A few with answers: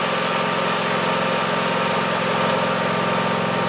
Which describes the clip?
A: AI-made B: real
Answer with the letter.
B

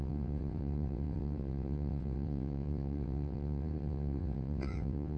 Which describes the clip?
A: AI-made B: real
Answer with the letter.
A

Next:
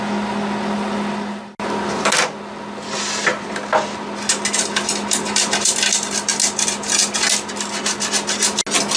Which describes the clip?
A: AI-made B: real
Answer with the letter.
B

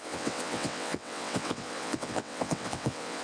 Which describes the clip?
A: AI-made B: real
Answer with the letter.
A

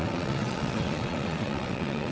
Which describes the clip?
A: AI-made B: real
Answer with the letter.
A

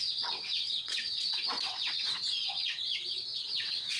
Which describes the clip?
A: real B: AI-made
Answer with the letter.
B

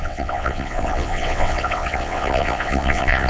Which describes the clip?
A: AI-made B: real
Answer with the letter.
A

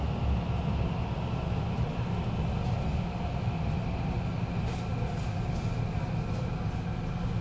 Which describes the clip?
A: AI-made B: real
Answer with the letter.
B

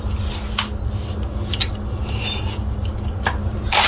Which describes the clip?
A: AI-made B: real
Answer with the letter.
B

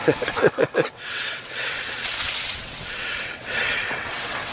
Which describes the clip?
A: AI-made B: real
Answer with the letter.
A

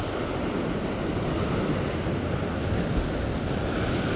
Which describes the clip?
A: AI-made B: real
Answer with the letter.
B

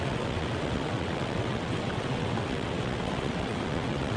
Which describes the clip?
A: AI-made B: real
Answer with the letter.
A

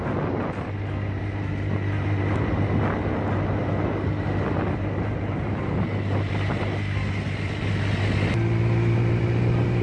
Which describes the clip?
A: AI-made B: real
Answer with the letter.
B